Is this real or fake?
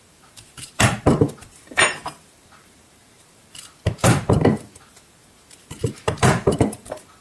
fake